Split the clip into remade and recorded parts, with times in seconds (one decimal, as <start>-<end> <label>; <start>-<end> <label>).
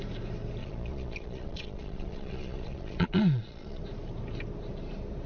0.0-0.6 recorded; 0.6-3.8 remade; 3.8-5.3 recorded